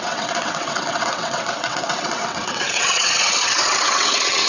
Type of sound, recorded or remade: remade